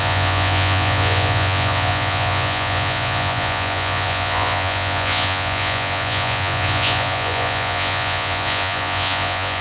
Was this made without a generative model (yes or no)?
no